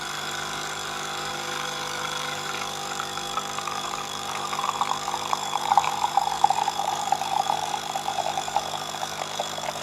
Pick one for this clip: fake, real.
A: fake